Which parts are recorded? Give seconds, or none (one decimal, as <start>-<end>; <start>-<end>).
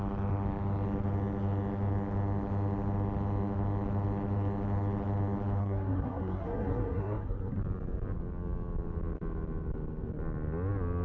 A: 0.0-5.6; 7.6-11.0